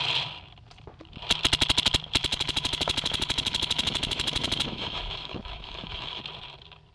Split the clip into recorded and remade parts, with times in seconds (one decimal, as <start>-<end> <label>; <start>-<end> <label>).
0.0-2.2 recorded; 2.2-6.2 remade; 6.2-6.9 recorded